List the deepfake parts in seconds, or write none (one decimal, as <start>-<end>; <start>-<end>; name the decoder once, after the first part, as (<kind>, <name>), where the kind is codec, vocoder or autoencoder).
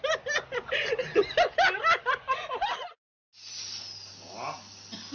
none